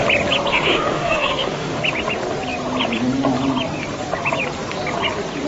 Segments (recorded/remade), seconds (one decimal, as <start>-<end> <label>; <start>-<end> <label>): 0.0-0.5 recorded; 0.5-1.8 remade; 1.8-5.5 recorded